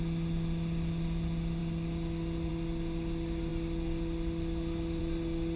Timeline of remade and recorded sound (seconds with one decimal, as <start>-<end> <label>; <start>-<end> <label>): 0.0-5.6 recorded